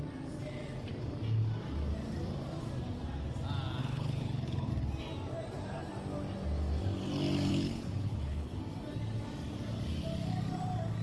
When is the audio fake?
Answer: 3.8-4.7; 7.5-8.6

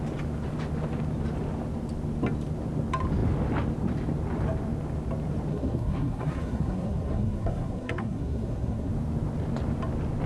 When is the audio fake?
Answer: 5.5-8.9

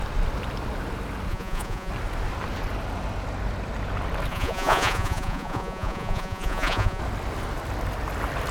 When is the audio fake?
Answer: 1.3-1.9; 4.3-7.0